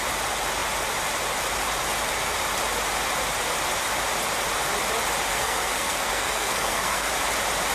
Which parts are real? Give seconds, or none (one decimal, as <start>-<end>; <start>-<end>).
0.0-5.3; 7.1-7.7